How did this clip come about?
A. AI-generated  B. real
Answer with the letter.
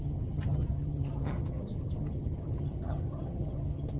A